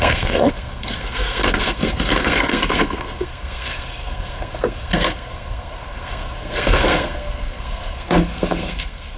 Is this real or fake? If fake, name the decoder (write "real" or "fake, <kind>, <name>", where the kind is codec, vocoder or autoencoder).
fake, codec, SNAC